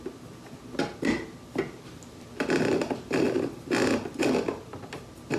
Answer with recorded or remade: recorded